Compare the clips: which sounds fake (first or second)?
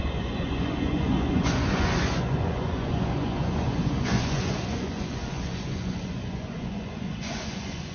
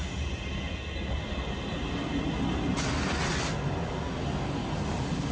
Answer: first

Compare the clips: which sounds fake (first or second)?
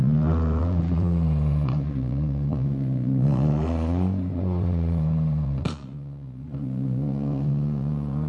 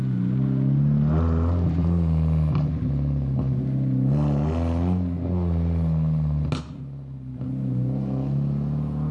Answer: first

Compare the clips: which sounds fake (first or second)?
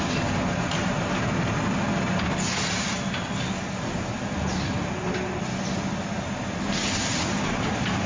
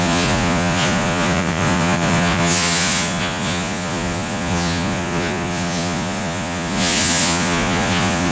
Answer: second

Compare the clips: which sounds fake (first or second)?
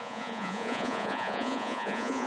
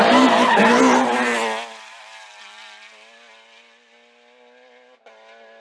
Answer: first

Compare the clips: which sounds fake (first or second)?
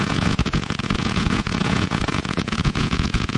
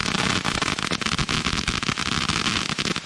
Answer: first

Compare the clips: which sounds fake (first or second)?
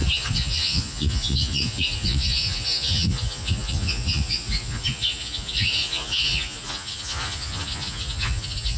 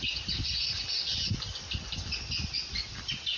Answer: first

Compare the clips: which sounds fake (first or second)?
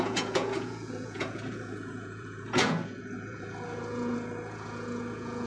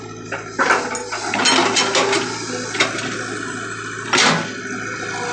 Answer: first